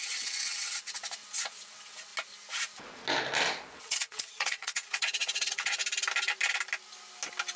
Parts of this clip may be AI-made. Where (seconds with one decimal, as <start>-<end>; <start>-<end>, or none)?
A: 0.0-2.1; 3.7-5.8

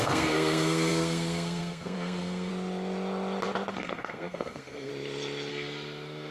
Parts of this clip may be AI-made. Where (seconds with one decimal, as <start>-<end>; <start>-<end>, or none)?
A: 0.0-2.5; 3.7-4.9; 5.5-6.3

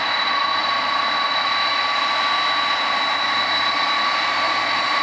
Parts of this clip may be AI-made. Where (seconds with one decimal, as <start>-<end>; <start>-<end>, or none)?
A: none

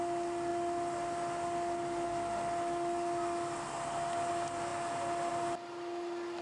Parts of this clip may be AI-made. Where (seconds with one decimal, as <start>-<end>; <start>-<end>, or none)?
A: none